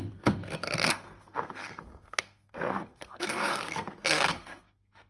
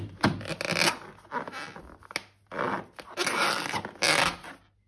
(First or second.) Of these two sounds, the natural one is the second